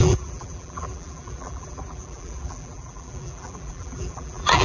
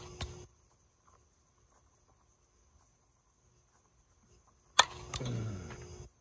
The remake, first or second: first